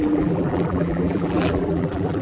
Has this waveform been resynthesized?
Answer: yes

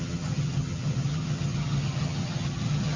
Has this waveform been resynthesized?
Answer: yes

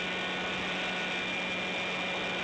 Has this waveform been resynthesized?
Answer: no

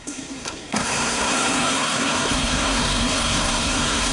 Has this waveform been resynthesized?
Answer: yes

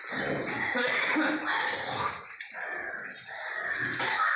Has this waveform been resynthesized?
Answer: no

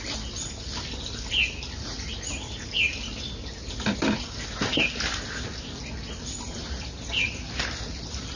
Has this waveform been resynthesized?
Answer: no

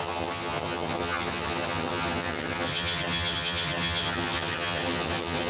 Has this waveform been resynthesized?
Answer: yes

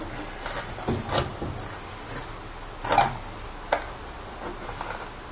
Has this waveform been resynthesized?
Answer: no